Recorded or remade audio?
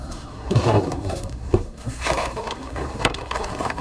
remade